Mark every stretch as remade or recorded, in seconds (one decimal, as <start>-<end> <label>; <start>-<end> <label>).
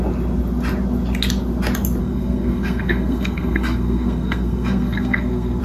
0.0-2.0 recorded; 2.0-5.6 remade